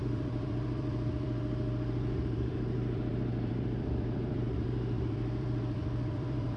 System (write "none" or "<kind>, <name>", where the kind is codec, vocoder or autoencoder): vocoder, BigVGAN v2